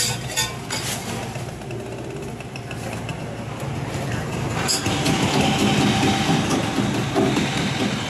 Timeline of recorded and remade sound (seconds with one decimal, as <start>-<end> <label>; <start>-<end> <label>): 0.0-8.1 recorded